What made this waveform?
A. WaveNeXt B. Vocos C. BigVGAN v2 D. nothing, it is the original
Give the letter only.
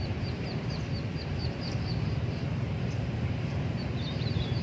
D